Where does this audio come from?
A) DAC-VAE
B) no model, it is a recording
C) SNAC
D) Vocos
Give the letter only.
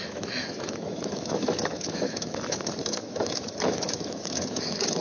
A